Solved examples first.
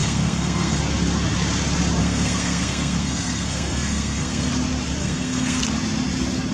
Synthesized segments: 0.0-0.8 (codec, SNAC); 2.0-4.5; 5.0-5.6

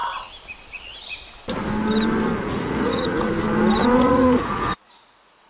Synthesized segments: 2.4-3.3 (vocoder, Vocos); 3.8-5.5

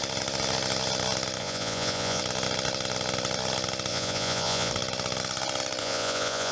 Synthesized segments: 1.4-2.2 (vocoder, Vocos); 3.9-4.7; 5.8-6.5

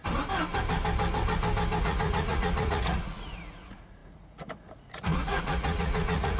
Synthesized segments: 1.8-6.4 (vocoder, Vocos)

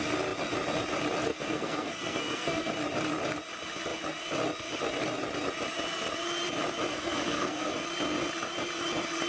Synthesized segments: 1.3-2.7 (codec, SNAC); 6.9-7.7